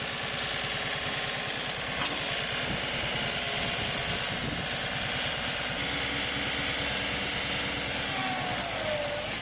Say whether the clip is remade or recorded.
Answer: recorded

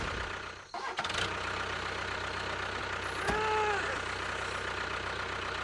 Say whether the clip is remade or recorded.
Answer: recorded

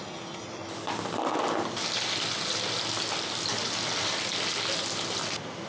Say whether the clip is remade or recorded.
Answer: recorded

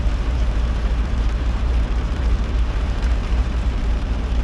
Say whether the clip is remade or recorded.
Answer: remade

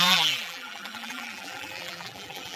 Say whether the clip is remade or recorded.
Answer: remade